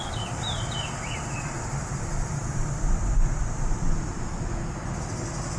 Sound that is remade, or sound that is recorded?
recorded